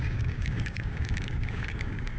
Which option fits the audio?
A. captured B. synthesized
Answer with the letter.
B